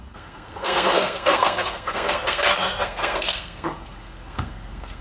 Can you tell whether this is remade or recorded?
remade